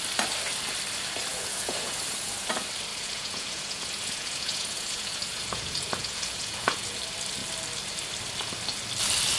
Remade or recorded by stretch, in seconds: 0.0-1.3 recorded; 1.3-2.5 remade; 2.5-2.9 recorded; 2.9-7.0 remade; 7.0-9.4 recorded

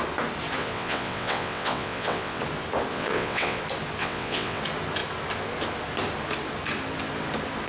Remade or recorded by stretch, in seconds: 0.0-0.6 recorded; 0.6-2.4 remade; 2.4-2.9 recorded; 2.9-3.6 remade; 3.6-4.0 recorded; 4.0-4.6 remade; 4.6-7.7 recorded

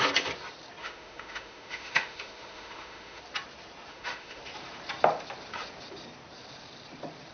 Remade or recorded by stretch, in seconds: 0.0-0.8 recorded; 0.8-3.2 remade; 3.2-3.9 recorded; 3.9-4.4 remade; 4.4-7.3 recorded

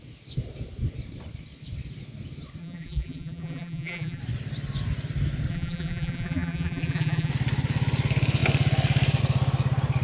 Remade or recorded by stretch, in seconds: 0.0-2.6 recorded; 2.6-4.2 remade; 4.2-5.5 recorded; 5.5-7.3 remade; 7.3-10.0 recorded